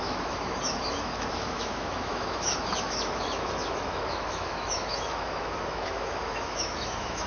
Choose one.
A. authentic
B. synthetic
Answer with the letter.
B